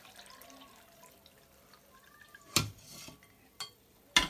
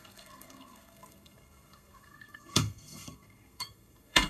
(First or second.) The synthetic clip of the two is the second